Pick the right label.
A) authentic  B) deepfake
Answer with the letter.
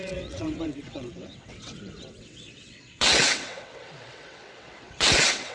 B